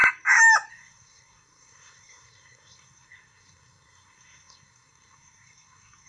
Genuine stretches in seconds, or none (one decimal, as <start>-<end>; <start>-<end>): 0.0-0.7